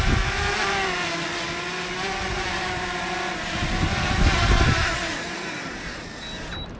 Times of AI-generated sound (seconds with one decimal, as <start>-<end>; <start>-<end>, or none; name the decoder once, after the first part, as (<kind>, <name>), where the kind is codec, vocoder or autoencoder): 2.3-6.0 (vocoder, BigVGAN v2)